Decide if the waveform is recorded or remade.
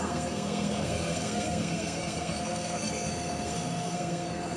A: remade